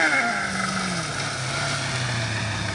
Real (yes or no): yes